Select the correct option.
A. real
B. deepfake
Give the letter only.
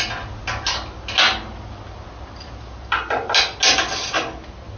A